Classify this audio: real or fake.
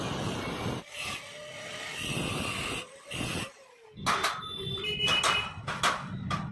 real